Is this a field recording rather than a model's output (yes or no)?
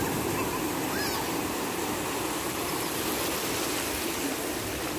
yes